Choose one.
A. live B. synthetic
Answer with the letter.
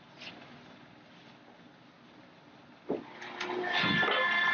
A